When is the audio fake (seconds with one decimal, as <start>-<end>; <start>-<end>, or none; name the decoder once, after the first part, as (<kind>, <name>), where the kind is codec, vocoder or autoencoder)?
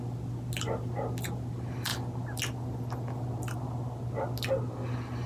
none